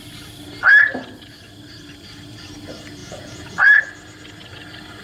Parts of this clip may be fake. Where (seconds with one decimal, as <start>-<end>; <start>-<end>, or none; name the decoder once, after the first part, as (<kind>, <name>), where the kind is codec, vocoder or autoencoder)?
3.0-3.8 (vocoder, Vocos)